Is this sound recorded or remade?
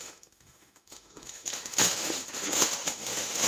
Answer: remade